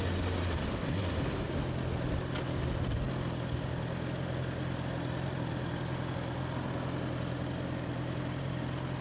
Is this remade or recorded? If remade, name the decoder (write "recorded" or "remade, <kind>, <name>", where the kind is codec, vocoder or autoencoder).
recorded